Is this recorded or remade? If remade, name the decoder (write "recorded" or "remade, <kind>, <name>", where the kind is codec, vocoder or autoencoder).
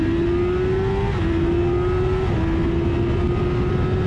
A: recorded